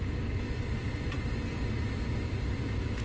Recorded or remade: recorded